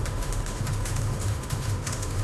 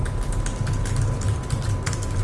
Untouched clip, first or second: second